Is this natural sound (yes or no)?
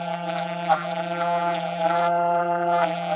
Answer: no